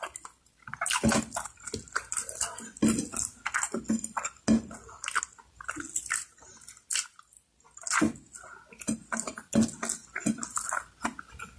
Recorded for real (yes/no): yes